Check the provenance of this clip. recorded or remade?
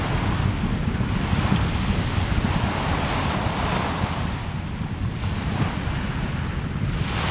recorded